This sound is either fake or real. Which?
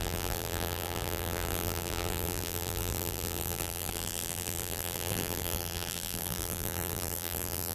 fake